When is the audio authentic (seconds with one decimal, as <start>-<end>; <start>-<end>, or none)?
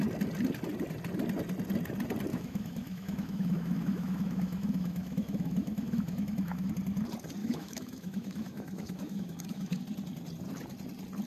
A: 0.0-2.3; 6.7-7.4; 9.8-11.3